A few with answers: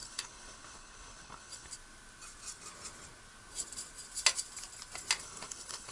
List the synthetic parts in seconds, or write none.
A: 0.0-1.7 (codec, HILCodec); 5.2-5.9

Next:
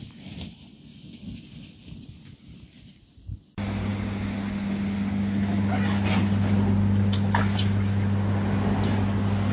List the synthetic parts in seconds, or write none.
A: none